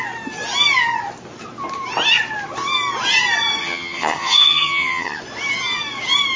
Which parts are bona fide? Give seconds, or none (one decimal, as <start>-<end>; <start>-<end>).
0.0-3.6; 5.2-6.4